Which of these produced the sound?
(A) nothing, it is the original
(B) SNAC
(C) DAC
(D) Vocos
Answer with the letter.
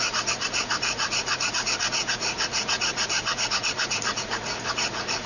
D